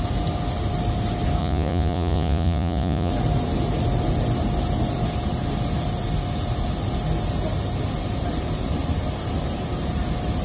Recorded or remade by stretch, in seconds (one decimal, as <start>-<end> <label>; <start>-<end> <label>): 0.0-1.4 recorded; 1.4-3.1 remade; 3.1-10.4 recorded